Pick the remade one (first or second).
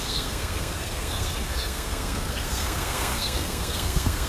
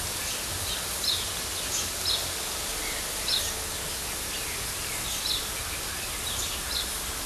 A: first